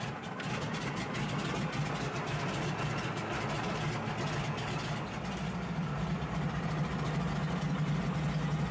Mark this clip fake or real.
real